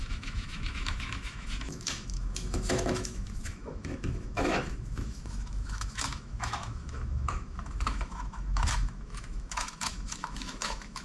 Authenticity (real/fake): fake